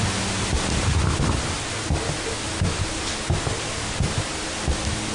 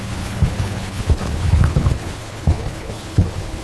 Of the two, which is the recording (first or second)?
first